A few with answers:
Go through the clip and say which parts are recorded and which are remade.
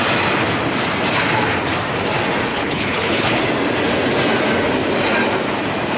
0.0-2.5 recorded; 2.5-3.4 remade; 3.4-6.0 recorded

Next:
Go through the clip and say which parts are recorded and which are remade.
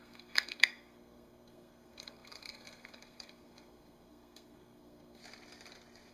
0.0-5.2 remade; 5.2-6.1 recorded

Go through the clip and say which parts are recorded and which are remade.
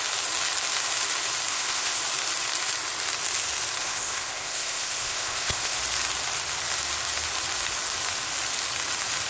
0.0-1.5 recorded; 1.5-2.0 remade; 2.0-3.8 recorded; 3.8-5.8 remade; 5.8-9.3 recorded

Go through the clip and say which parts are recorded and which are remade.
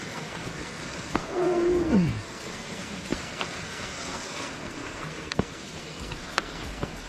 0.0-7.1 remade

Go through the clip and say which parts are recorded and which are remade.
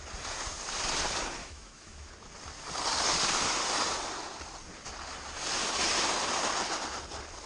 0.0-1.4 recorded; 1.4-2.1 remade; 2.1-7.5 recorded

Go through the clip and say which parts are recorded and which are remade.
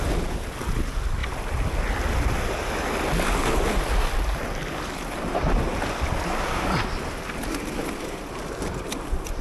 0.0-9.4 recorded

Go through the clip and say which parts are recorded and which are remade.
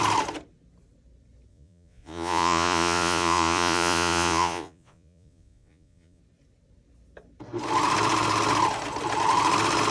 0.0-1.5 recorded; 1.5-6.2 remade; 6.2-9.9 recorded